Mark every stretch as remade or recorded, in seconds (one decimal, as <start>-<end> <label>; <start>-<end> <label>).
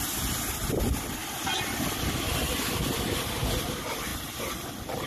0.0-4.1 recorded; 4.1-5.1 remade